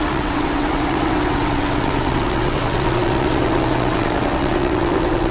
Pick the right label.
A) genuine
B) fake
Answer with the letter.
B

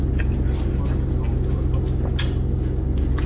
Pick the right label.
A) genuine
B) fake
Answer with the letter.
A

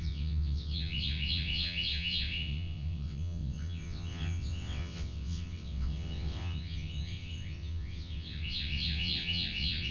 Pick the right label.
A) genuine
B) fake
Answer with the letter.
B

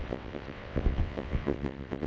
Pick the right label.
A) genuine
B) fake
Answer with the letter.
B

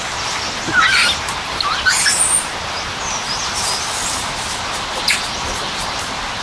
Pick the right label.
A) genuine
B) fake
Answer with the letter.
A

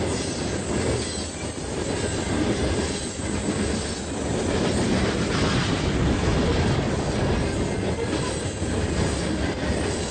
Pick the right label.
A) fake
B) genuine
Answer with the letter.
B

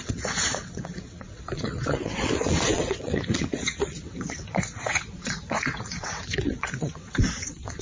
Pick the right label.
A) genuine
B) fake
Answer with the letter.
B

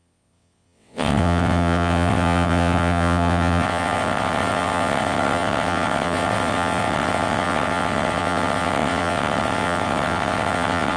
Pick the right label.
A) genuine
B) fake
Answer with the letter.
B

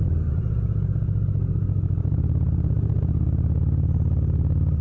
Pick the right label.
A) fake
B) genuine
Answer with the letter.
B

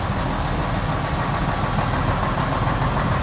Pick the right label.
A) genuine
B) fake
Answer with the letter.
A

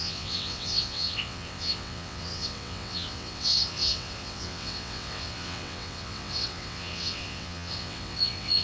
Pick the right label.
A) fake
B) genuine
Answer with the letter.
A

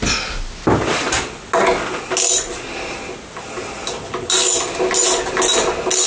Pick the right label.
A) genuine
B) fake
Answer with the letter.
A